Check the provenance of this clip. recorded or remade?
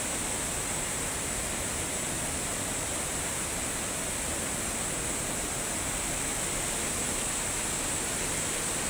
remade